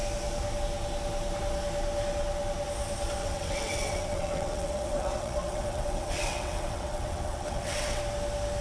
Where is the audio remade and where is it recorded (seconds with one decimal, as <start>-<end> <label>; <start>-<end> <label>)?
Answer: 0.0-3.2 recorded; 3.2-8.0 remade; 8.0-8.6 recorded